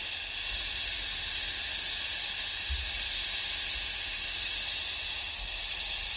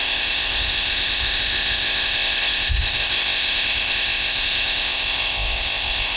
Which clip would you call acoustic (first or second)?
first